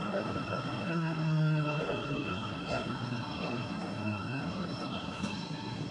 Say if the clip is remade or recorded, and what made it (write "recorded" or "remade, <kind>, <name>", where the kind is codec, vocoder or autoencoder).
remade, codec, SNAC